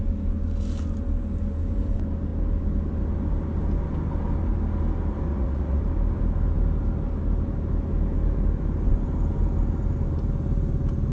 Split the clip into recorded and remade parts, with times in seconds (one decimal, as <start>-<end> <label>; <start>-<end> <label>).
0.0-5.3 recorded; 5.3-5.8 remade; 5.8-11.1 recorded